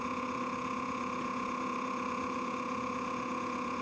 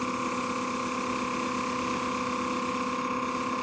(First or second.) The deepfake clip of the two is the first